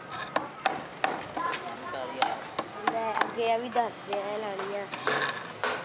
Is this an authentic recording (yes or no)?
yes